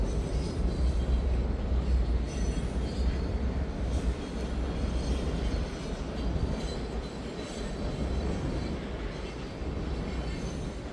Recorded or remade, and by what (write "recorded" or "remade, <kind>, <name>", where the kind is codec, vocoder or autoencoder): recorded